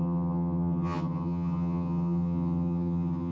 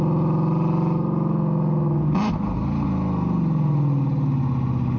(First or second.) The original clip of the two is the second